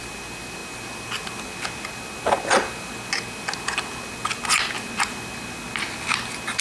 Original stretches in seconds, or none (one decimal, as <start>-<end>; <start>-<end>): 0.0-6.6